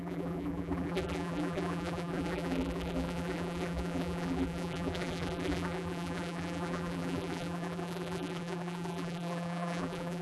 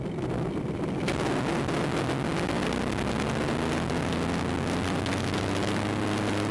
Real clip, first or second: second